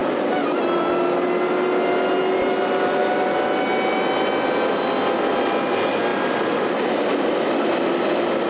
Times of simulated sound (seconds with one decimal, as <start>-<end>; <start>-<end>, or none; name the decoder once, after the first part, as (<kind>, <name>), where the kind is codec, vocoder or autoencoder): none